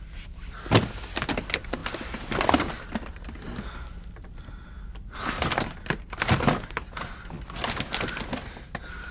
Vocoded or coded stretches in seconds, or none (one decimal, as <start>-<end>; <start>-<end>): none